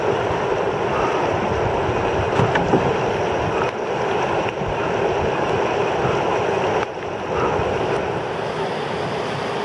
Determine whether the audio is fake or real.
real